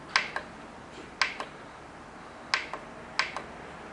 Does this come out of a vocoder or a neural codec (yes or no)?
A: no